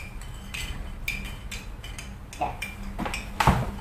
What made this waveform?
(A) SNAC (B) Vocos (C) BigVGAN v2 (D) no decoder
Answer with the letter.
D